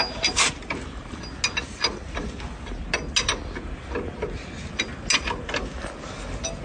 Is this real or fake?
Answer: real